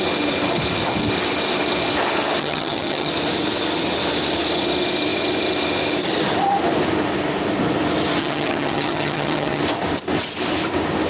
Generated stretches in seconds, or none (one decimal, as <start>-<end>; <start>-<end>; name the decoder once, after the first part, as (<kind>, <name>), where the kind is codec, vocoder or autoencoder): 2.4-3.1 (vocoder, HiFi-GAN); 8.2-9.6